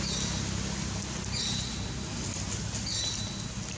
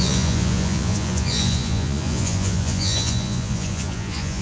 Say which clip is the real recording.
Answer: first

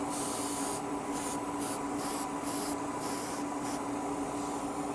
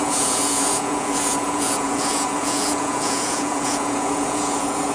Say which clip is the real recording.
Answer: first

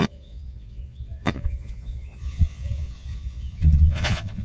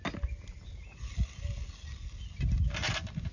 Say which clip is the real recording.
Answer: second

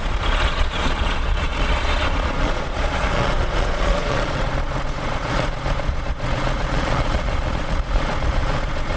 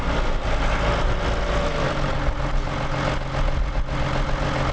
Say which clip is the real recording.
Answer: second